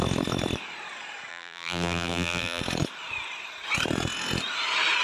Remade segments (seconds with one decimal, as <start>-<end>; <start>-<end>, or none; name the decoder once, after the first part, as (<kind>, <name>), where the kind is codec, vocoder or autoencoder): 1.3-2.6 (vocoder, BigVGAN v2)